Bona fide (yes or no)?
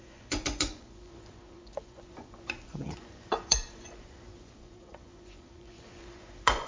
no